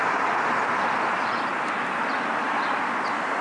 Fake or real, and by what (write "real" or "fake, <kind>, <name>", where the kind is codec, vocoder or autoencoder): real